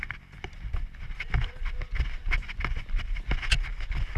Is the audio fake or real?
real